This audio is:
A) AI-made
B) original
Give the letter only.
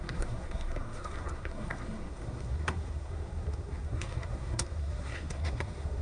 A